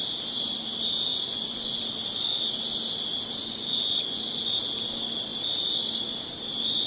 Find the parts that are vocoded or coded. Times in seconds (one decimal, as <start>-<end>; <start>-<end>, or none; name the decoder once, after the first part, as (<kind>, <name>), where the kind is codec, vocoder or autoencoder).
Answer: 1.1-1.8 (vocoder, Vocos); 3.4-4.4